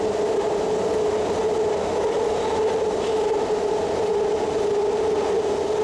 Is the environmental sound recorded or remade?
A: recorded